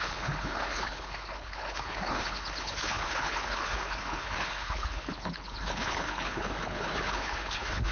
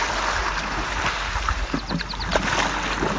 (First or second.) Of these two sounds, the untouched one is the second